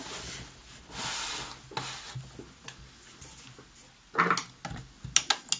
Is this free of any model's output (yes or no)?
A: yes